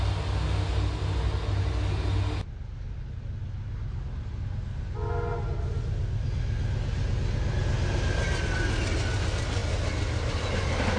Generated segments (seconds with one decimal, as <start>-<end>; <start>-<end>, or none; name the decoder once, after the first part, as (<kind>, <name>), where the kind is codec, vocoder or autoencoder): none